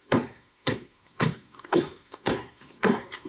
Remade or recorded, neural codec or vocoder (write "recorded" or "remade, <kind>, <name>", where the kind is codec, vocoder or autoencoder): remade, codec, SNAC